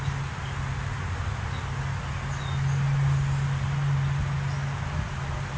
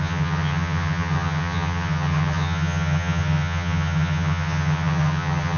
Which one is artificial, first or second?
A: second